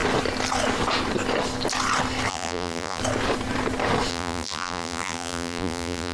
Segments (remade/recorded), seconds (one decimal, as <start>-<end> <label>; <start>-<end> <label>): 0.0-2.3 recorded; 2.3-3.0 remade; 3.0-4.1 recorded; 4.1-6.1 remade